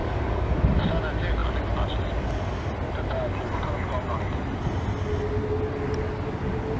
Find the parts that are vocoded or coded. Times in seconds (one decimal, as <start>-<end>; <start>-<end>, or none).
0.0-0.8